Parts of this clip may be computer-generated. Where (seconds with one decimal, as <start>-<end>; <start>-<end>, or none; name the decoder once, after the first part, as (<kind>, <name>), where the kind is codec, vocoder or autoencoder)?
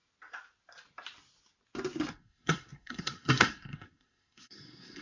2.1-5.0 (codec, SNAC)